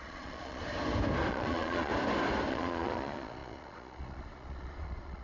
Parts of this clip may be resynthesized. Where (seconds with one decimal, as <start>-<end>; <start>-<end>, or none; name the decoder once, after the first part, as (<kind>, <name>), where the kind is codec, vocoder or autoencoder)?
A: 0.0-0.6 (vocoder, Vocos); 1.3-1.9; 2.5-5.2